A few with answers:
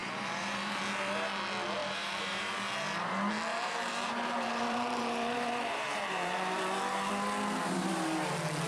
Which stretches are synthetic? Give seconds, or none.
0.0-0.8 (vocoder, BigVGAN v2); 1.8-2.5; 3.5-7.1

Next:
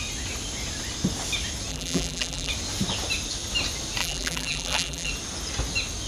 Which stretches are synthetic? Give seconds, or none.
1.7-2.5 (vocoder, BigVGAN v2); 4.0-5.1

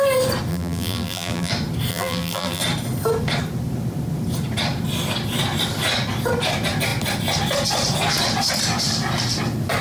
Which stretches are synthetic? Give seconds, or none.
0.5-1.5 (vocoder, BigVGAN v2); 1.9-2.6

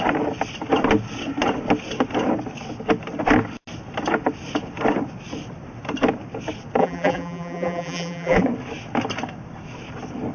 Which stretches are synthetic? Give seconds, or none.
6.8-8.4 (vocoder, BigVGAN v2)

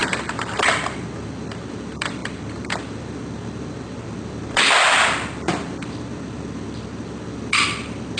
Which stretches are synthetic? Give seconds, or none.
none